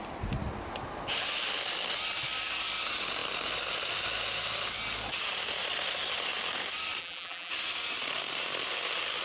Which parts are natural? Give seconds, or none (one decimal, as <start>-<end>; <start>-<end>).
0.0-7.0; 7.5-9.2

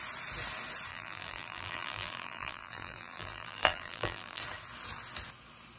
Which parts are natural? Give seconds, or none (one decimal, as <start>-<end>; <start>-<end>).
0.0-0.9; 4.4-5.8